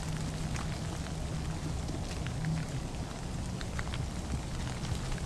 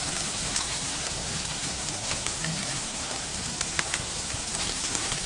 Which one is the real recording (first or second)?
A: first